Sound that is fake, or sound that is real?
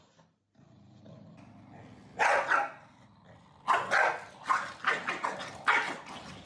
real